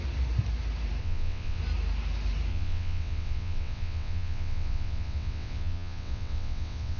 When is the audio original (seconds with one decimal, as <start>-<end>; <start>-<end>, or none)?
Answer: 0.0-1.0; 1.6-2.5